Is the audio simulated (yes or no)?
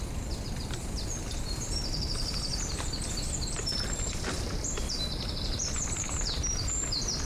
yes